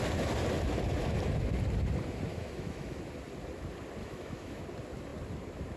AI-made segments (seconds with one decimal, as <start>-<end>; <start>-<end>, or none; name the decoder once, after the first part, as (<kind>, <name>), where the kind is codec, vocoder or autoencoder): 2.3-3.0 (autoencoder, DAC-VAE); 4.0-4.6